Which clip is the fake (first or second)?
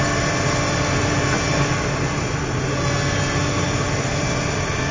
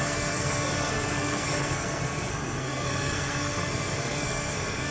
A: second